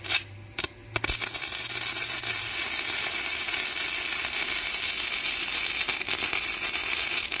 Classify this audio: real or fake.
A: real